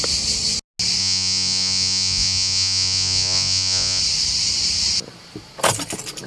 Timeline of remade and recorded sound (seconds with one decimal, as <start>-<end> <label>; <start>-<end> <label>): 0.0-1.0 recorded; 1.0-4.0 remade; 4.0-6.3 recorded